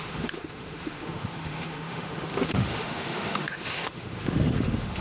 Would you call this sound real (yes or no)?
no